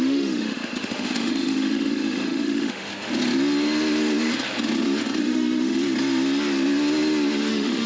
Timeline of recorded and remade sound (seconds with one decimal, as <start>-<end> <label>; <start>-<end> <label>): 0.0-2.9 remade; 2.9-5.2 recorded; 5.2-5.8 remade; 5.8-7.5 recorded; 7.5-7.9 remade